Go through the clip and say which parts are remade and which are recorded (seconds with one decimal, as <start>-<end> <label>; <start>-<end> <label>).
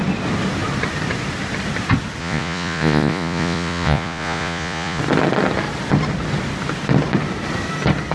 0.0-2.2 recorded; 2.2-5.0 remade; 5.0-8.1 recorded